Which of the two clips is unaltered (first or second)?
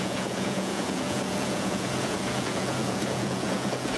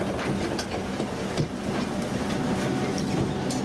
second